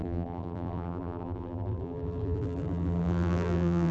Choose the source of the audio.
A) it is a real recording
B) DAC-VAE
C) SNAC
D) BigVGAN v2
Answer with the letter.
D